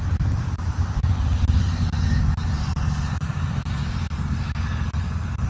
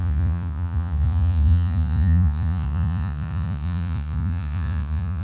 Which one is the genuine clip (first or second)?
first